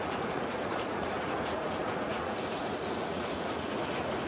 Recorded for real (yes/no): no